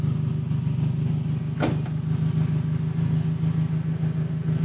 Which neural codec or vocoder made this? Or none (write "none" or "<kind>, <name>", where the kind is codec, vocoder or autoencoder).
none